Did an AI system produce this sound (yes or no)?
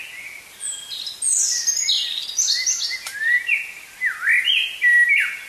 no